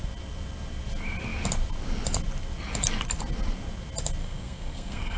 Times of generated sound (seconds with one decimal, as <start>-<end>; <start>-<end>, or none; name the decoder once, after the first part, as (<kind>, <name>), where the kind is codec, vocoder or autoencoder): 4.2-5.2 (codec, SNAC)